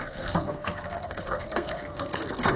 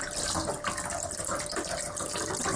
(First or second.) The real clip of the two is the second